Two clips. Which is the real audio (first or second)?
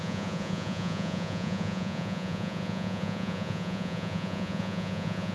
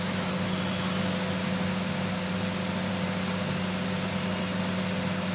second